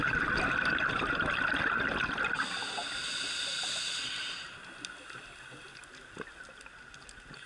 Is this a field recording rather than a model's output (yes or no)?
yes